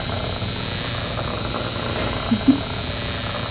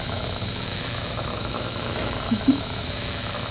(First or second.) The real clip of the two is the first